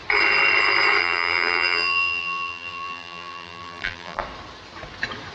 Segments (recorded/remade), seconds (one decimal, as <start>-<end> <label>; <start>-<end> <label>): 0.0-1.0 recorded; 1.0-4.2 remade; 4.2-5.3 recorded